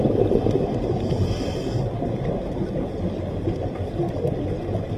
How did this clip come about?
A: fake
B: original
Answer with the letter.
B